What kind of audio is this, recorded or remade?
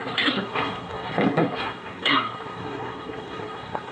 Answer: remade